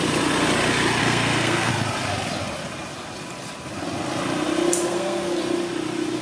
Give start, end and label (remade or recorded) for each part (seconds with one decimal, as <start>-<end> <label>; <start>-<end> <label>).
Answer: 0.0-1.0 recorded; 1.0-1.7 remade; 1.7-4.9 recorded; 4.9-5.4 remade; 5.4-6.2 recorded